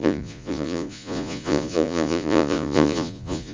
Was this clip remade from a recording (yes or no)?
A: yes